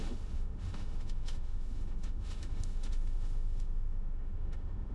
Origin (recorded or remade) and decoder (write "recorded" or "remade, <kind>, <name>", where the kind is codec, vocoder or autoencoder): remade, autoencoder, DAC-VAE